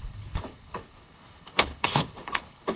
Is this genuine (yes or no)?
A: no